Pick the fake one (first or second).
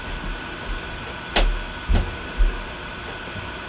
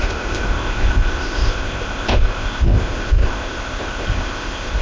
second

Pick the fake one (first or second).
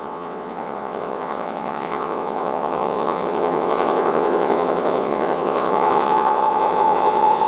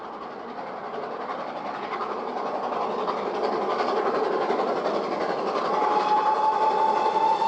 first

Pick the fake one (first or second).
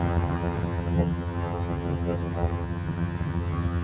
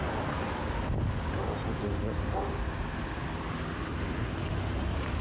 first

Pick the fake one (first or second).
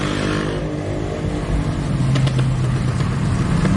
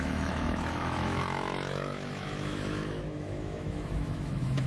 second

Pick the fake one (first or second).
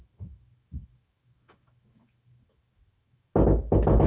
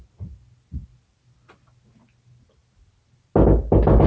first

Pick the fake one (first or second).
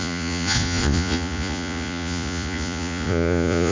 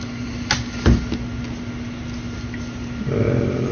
first